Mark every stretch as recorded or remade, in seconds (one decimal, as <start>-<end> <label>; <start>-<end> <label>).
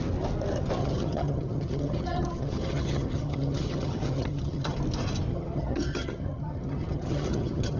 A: 0.0-0.8 recorded; 0.8-4.8 remade; 4.8-5.3 recorded; 5.3-7.8 remade